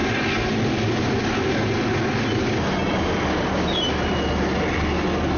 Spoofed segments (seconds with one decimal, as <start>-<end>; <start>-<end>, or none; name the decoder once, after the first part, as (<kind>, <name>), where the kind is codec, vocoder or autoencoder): none